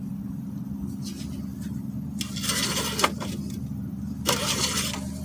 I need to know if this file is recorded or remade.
recorded